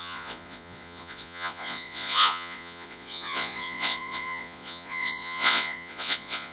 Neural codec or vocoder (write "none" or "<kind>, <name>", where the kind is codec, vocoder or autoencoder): vocoder, Vocos